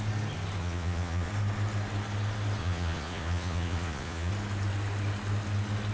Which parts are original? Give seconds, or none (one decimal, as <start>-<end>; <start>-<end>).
0.0-0.6; 1.3-2.6; 4.3-5.9